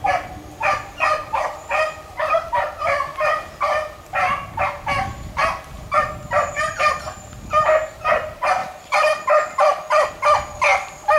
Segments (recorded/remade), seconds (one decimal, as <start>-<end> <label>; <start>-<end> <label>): 0.0-1.2 recorded; 1.2-2.6 remade; 2.6-8.6 recorded; 8.6-10.1 remade; 10.1-11.2 recorded